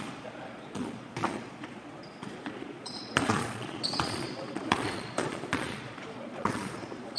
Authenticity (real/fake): fake